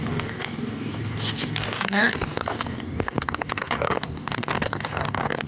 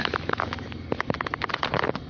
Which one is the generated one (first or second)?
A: first